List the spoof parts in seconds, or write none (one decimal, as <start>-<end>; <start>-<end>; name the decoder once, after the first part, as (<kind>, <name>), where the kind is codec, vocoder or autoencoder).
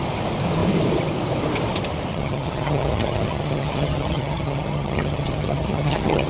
2.1-6.3 (vocoder, HiFi-GAN)